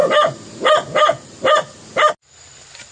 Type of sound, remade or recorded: recorded